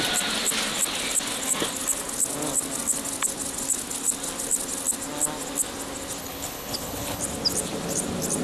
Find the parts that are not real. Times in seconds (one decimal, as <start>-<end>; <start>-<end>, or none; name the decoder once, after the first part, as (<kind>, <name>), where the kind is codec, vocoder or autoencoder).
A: 6.2-7.2 (codec, HILCodec)